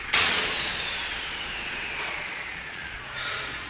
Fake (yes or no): yes